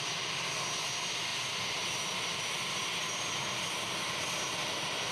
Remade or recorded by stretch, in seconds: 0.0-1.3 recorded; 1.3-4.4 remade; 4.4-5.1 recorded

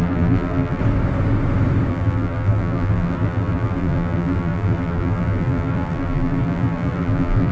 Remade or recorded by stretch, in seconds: 0.0-0.8 remade; 0.8-1.9 recorded; 1.9-7.5 remade

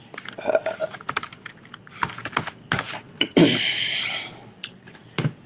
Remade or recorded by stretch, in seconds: 0.0-5.5 recorded